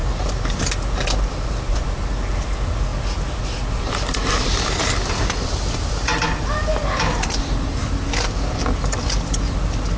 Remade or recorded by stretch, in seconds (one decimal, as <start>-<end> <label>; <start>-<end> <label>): 0.0-6.8 recorded; 6.8-7.4 remade; 7.4-10.0 recorded